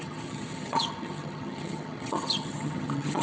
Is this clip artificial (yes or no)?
yes